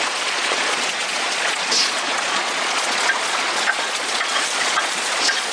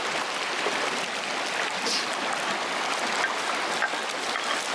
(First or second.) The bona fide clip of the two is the second